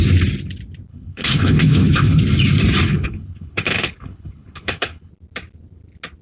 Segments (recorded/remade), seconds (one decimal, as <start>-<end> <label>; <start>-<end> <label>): 0.0-0.9 recorded; 0.9-2.2 remade; 2.2-2.9 recorded; 2.9-5.1 remade; 5.1-6.2 recorded